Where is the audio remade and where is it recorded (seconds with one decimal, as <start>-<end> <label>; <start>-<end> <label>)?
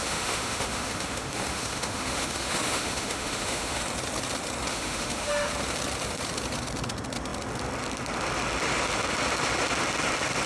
0.0-3.8 remade; 3.8-4.7 recorded; 4.7-5.5 remade; 5.5-10.5 recorded